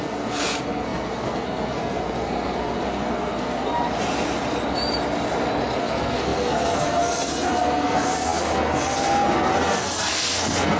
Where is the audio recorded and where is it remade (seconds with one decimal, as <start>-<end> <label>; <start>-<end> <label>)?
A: 0.0-3.7 remade; 3.7-5.8 recorded; 5.8-10.8 remade